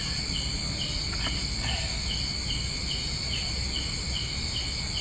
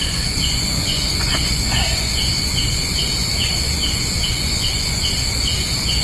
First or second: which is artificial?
second